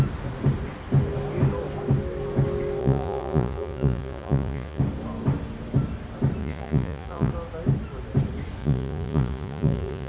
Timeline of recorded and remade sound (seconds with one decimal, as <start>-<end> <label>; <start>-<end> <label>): 0.0-2.8 recorded; 2.8-4.8 remade; 4.8-6.4 recorded; 6.4-7.3 remade; 7.3-8.6 recorded; 8.6-10.1 remade